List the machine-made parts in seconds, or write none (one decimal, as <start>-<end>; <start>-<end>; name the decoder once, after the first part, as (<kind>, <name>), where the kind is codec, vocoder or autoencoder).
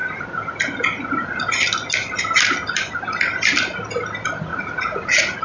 4.5-5.4 (vocoder, Vocos)